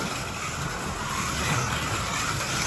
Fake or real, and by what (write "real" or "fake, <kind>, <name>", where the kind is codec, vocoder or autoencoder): real